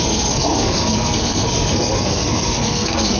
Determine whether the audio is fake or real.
fake